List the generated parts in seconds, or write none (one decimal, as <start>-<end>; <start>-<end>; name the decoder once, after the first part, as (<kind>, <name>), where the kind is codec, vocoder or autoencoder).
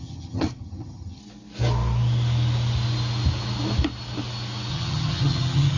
0.0-1.2 (vocoder, HiFi-GAN); 4.7-5.8